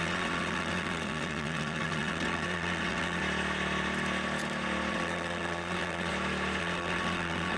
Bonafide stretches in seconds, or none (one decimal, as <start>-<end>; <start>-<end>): 3.2-4.9; 6.1-6.6